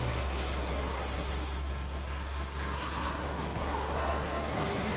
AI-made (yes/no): yes